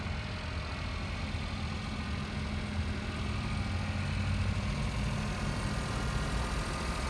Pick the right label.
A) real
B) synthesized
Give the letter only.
A